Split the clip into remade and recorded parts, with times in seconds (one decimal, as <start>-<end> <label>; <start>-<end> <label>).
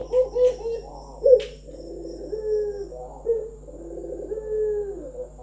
0.0-5.4 recorded